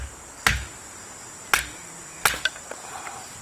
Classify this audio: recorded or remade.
recorded